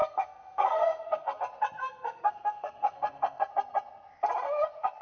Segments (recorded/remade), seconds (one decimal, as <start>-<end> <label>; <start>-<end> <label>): 0.0-1.4 remade; 1.4-1.8 recorded; 1.8-3.5 remade; 3.5-5.0 recorded